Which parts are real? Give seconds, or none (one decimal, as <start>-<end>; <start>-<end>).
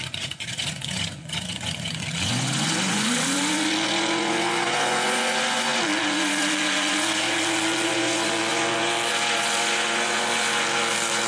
none